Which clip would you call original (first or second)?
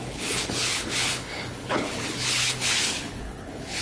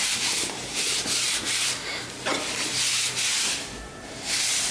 second